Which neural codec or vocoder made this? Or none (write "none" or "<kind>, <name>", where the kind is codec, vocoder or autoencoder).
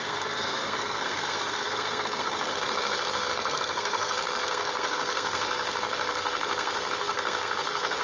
codec, SNAC